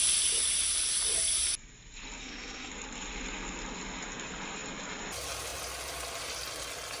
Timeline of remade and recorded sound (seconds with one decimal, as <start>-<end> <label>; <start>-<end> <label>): 0.0-2.2 recorded; 2.2-2.7 remade; 2.7-7.0 recorded